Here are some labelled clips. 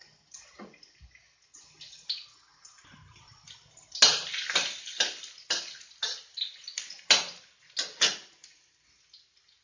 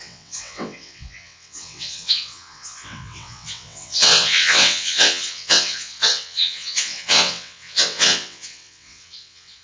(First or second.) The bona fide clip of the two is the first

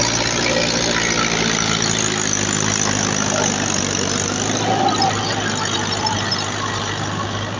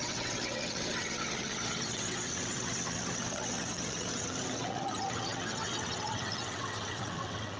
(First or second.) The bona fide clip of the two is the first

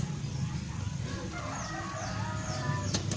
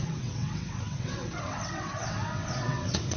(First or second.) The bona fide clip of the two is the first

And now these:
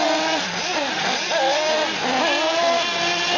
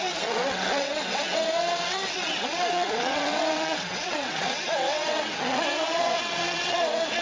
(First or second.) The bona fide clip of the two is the first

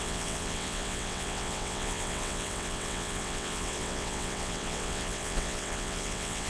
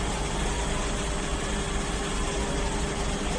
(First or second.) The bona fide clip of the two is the second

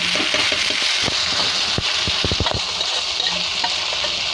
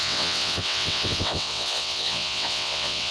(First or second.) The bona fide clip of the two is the first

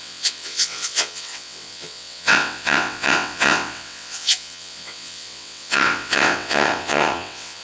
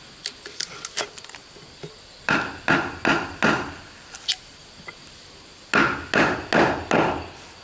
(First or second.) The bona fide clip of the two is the second